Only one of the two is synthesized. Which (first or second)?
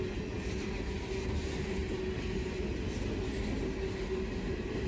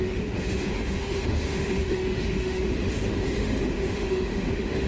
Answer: second